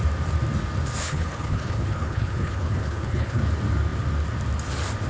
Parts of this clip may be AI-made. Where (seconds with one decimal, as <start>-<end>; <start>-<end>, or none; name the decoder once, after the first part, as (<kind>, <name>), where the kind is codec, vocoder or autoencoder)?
1.0-3.4 (codec, HILCodec)